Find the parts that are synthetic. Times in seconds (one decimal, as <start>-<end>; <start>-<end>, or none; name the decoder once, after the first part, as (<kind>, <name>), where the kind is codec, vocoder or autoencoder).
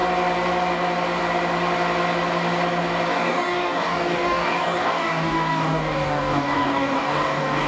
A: 3.1-7.7 (codec, DAC)